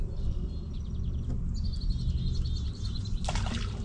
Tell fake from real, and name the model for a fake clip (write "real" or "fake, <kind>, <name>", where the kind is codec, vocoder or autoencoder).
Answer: real